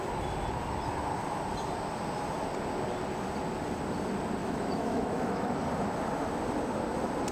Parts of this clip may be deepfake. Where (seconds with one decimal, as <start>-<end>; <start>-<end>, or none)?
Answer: 4.4-5.5